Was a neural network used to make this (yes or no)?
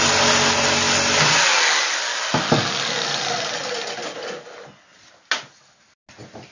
no